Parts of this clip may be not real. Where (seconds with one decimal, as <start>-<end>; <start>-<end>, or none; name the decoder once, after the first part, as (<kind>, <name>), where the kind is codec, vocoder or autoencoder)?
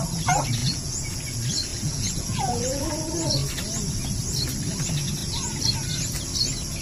0.6-1.2 (vocoder, Vocos); 1.7-2.8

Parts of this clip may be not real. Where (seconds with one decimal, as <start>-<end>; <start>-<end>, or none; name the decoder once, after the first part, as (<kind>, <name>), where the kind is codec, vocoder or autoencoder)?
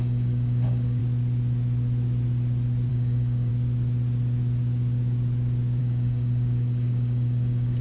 0.0-1.0 (codec, DAC); 2.9-3.5; 5.8-7.8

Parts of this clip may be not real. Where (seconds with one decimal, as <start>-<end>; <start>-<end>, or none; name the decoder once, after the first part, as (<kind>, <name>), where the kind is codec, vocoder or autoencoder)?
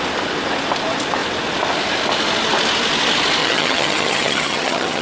3.4-5.0 (vocoder, HiFi-GAN)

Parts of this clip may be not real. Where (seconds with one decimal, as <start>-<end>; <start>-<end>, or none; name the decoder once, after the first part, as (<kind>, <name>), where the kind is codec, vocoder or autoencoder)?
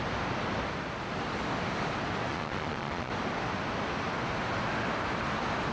2.3-3.1 (vocoder, Vocos)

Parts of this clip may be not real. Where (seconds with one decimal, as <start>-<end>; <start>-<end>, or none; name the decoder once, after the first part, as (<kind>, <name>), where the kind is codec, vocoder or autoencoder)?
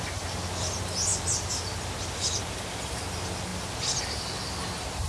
none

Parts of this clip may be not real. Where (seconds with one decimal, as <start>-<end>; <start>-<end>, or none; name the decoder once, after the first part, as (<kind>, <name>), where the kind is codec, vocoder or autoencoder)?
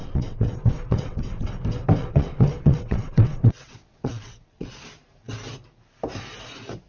0.0-1.5 (vocoder, WaveNeXt); 2.0-4.7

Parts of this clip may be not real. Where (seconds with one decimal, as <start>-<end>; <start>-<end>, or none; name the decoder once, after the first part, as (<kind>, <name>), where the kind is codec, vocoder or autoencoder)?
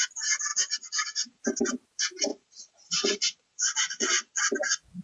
0.5-1.4 (vocoder, Vocos); 2.3-4.4